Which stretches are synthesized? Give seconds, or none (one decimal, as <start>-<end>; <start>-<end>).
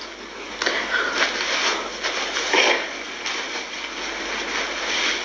none